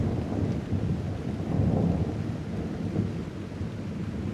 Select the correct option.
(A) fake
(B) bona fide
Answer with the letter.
B